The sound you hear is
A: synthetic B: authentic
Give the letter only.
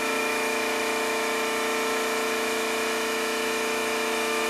A